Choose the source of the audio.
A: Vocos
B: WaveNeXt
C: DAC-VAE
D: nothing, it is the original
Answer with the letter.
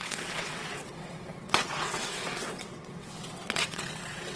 B